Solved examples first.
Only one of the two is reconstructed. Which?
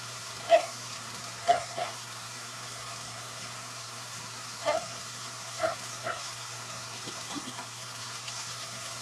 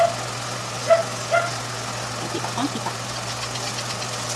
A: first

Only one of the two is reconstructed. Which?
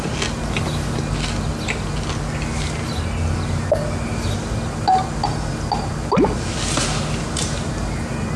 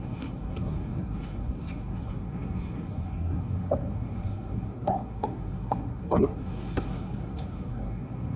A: second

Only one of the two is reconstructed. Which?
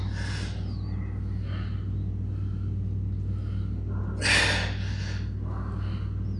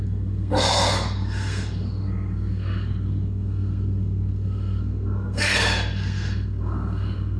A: second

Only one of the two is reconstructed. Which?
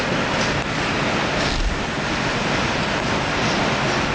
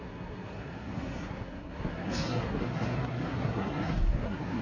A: second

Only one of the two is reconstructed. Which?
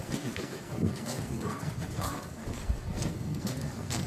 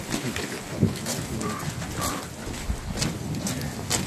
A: first